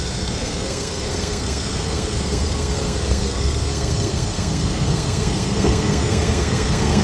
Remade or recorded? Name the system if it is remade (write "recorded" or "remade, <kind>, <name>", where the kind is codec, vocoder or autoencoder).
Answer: remade, codec, SNAC